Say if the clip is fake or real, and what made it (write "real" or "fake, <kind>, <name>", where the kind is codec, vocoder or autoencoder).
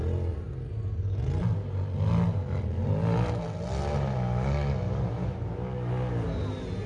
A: real